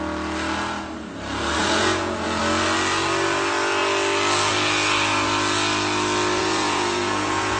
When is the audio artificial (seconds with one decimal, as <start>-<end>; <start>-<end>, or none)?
1.6-2.4; 6.4-7.6